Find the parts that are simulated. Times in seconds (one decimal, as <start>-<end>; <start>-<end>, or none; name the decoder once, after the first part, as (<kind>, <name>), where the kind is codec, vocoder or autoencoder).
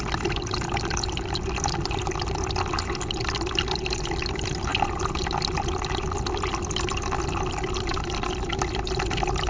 none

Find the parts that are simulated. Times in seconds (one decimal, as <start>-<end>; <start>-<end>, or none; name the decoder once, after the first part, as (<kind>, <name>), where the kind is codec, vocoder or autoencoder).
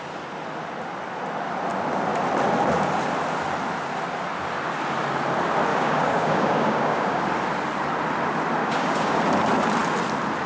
5.7-7.2 (codec, DAC); 8.6-9.2